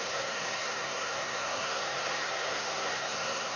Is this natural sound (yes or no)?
no